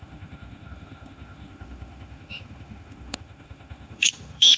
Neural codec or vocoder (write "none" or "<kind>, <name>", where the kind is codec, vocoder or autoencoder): autoencoder, DAC-VAE